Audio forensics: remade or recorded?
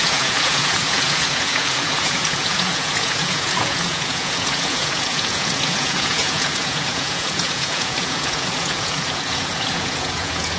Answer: remade